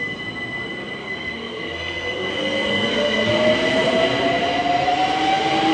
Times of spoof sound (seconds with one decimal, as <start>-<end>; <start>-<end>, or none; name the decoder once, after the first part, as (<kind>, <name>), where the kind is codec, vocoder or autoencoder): 1.0-2.3 (codec, SNAC); 2.7-3.3